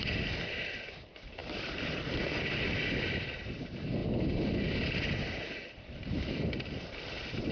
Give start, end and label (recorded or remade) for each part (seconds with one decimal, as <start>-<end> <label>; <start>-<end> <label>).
0.0-7.5 recorded